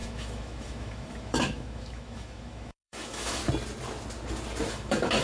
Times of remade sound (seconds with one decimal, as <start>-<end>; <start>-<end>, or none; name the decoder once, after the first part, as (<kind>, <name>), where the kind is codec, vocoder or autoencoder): 0.0-3.4 (autoencoder, DAC-VAE); 4.7-5.2